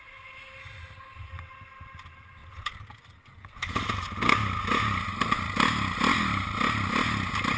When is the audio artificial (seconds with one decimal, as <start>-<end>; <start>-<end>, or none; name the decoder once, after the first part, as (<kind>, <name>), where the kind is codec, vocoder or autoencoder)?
none